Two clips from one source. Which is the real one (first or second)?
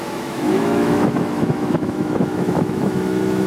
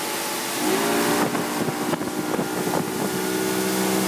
second